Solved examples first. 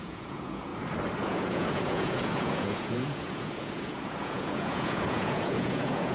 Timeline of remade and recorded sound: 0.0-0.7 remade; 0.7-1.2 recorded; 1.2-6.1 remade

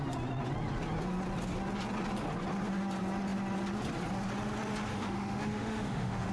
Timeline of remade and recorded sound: 0.0-4.9 recorded; 4.9-6.3 remade

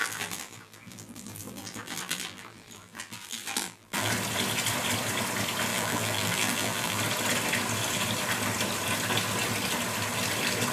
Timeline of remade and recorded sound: 0.0-4.1 remade; 4.1-5.7 recorded; 5.7-7.0 remade; 7.0-10.7 recorded

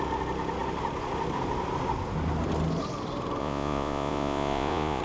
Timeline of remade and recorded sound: 0.0-3.4 recorded; 3.4-5.0 remade

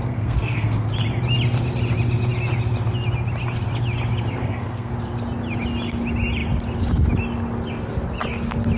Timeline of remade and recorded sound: 0.0-0.9 remade; 0.9-4.4 recorded; 4.4-4.9 remade; 4.9-8.8 recorded